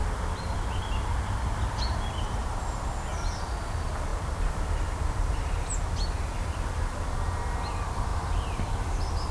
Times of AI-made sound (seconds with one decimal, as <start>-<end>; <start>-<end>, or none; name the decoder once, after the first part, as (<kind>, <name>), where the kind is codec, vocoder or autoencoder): 4.1-5.3 (vocoder, BigVGAN v2)